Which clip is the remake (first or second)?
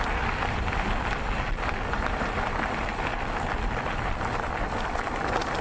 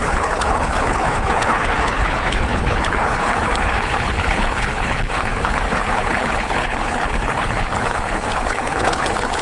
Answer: second